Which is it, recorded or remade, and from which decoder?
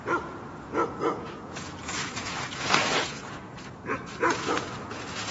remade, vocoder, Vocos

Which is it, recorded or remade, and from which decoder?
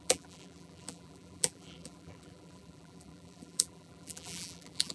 remade, vocoder, BigVGAN v2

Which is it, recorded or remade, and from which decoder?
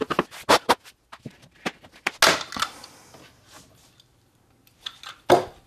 recorded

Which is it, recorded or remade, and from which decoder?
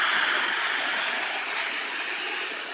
recorded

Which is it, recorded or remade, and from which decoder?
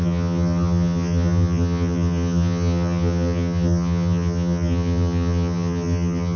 remade, vocoder, HiFi-GAN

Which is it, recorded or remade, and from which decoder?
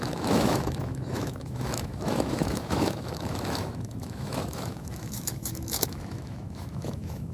remade, autoencoder, DAC-VAE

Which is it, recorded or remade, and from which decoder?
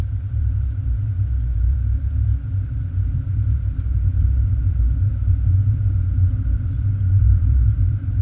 remade, vocoder, BigVGAN v2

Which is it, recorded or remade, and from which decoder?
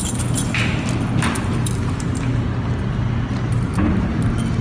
recorded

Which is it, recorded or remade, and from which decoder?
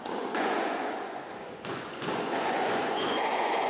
remade, vocoder, Vocos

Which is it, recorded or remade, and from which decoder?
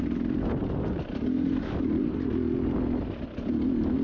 recorded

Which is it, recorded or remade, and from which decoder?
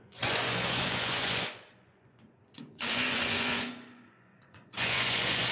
remade, vocoder, Vocos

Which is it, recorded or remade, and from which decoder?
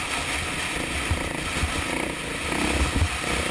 recorded